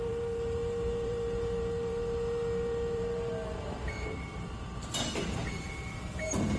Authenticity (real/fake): fake